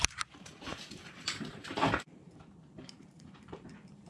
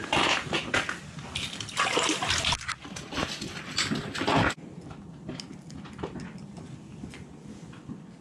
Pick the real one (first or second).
second